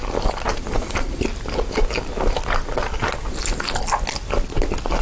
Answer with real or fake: real